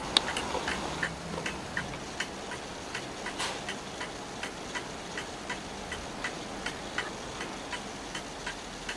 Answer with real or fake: real